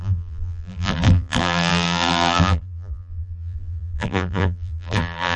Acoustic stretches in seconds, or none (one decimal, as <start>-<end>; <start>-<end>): none